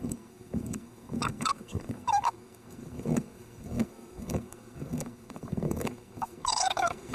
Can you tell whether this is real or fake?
fake